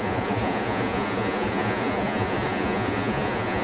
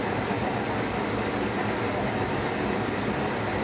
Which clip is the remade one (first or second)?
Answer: first